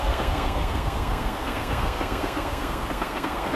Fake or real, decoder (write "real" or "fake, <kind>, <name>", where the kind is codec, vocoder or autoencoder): fake, codec, SNAC